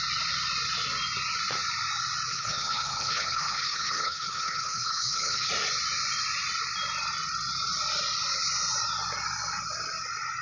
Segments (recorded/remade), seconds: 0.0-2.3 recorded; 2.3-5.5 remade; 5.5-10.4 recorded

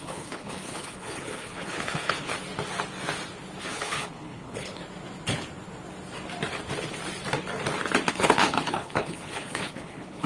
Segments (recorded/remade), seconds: 0.0-2.3 remade; 2.3-3.6 recorded; 3.6-4.8 remade; 4.8-8.1 recorded; 8.1-10.3 remade

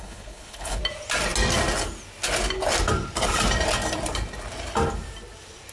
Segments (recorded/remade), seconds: 0.0-0.8 remade; 0.8-5.7 recorded

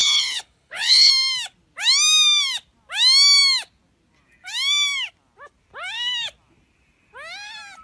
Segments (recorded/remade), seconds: 0.0-1.1 remade; 1.1-7.8 recorded

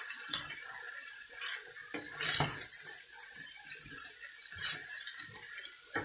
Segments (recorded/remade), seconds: 0.0-6.0 recorded

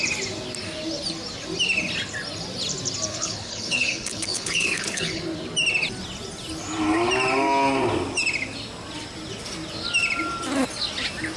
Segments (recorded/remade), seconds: 0.0-3.1 recorded; 3.1-5.2 remade; 5.2-11.4 recorded

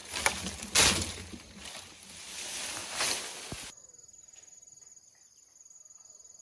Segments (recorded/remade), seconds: 0.0-6.4 recorded

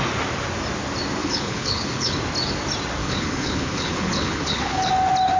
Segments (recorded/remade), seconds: 0.0-1.2 recorded; 1.2-2.2 remade; 2.2-3.0 recorded; 3.0-4.9 remade; 4.9-5.4 recorded